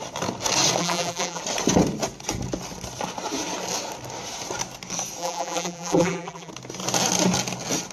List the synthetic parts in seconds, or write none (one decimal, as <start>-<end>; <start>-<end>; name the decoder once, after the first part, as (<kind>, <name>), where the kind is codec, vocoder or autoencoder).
0.8-1.4 (vocoder, BigVGAN v2); 5.2-6.5